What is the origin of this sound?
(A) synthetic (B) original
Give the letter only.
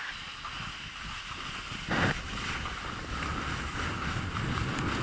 B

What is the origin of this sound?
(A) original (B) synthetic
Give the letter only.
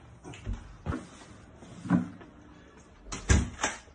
A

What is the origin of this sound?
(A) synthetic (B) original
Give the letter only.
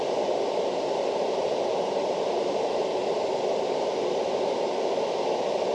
B